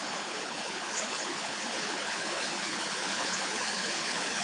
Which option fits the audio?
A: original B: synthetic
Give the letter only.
B